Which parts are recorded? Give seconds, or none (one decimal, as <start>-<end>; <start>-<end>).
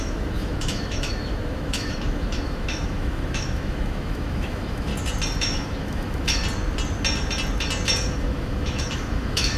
4.9-5.4; 6.4-8.1